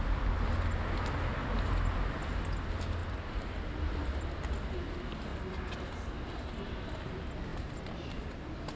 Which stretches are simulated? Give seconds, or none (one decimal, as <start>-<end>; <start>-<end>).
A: 3.0-4.2; 7.5-8.2